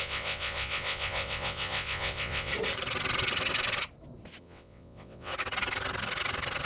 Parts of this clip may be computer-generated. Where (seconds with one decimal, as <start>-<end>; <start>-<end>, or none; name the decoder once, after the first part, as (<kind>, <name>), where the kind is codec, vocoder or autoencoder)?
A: 0.0-2.5 (vocoder, WaveNeXt); 4.4-5.3